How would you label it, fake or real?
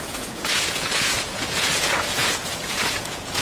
fake